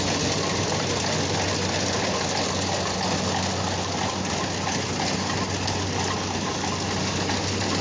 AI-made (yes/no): no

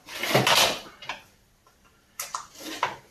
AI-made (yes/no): no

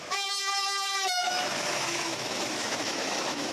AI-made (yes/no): yes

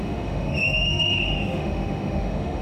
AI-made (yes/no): yes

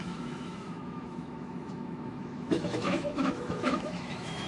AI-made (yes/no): yes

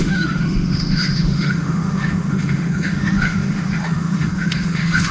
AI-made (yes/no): yes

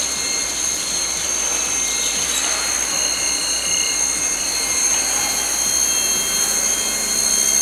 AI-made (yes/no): no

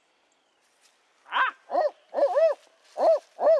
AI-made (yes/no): no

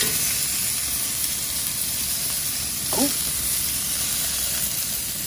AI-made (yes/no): no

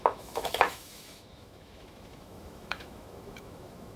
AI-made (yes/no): yes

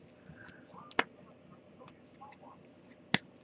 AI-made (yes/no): no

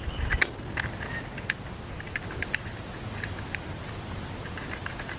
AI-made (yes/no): no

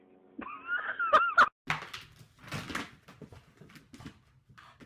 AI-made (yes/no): no